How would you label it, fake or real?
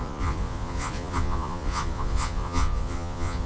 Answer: fake